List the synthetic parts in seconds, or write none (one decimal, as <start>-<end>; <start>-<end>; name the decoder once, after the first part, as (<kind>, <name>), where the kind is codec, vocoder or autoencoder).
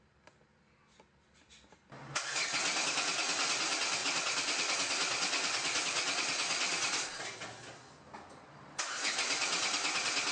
4.0-7.2 (vocoder, Vocos)